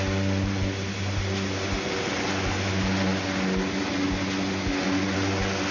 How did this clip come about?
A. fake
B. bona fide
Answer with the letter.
B